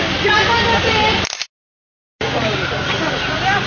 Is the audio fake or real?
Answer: real